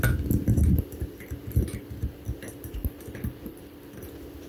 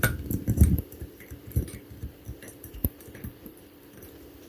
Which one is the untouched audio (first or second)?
first